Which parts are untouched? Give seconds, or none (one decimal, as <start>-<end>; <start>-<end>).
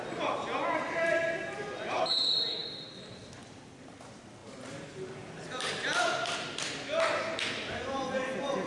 0.0-2.6; 4.0-8.7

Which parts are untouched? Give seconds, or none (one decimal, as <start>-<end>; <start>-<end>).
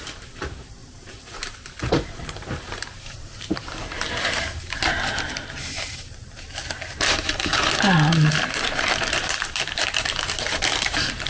7.5-9.2